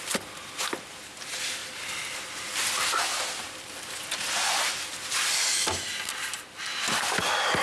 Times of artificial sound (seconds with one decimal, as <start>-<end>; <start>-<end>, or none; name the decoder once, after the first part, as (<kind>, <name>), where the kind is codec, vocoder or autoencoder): 1.6-4.8 (vocoder, BigVGAN v2)